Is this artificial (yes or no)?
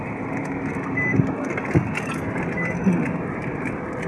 no